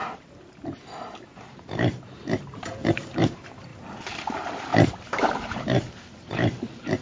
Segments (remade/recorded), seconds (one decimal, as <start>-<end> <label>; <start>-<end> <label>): 0.0-2.4 recorded; 2.4-7.0 remade